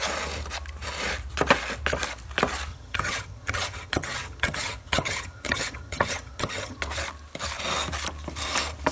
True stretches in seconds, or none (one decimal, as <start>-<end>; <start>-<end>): 0.0-2.7; 6.8-8.9